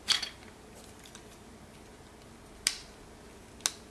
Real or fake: real